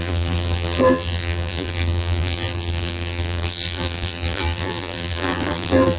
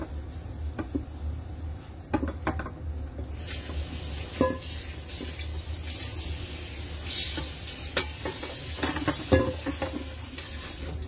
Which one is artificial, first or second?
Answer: first